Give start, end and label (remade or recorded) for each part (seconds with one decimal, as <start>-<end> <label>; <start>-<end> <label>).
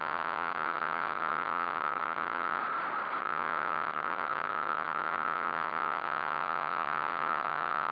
0.0-2.6 remade; 2.6-3.2 recorded; 3.2-7.9 remade